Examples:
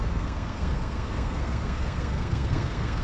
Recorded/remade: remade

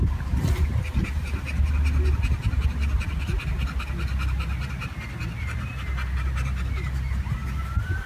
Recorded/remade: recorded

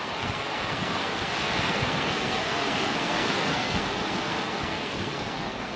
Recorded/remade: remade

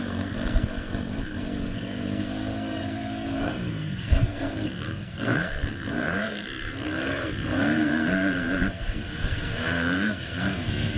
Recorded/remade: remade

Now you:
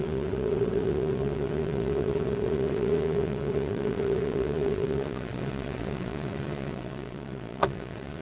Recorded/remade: remade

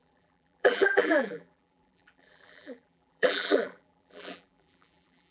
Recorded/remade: remade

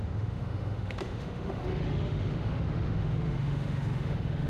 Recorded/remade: remade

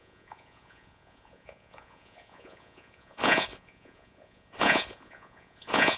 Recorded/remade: remade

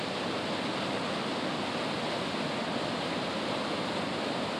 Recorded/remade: recorded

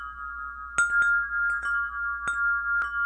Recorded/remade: recorded